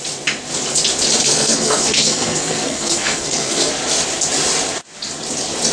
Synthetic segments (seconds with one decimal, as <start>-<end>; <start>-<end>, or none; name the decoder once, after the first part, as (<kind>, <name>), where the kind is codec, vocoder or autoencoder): 1.2-3.7 (codec, SNAC)